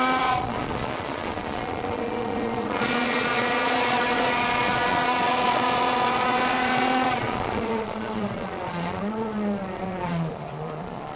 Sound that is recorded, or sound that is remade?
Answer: remade